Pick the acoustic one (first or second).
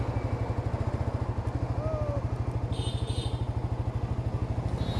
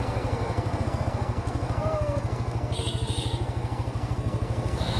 first